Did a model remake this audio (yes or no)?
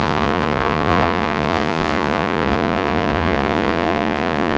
yes